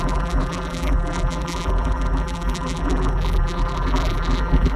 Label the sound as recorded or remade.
remade